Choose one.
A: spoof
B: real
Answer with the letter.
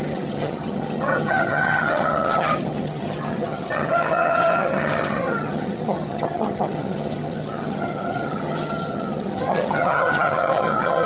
A